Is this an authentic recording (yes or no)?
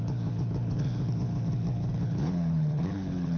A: no